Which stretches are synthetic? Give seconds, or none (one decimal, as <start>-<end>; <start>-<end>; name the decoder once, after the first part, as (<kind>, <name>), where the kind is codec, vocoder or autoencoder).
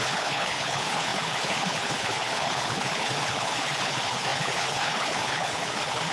0.0-6.1 (codec, HILCodec)